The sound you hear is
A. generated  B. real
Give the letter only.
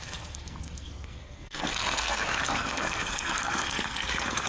A